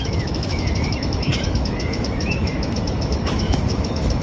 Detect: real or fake fake